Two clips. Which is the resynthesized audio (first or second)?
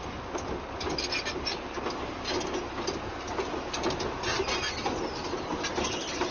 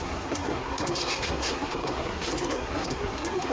second